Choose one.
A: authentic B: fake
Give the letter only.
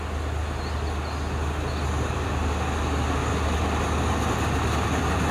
A